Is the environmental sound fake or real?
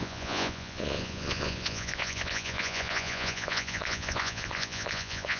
fake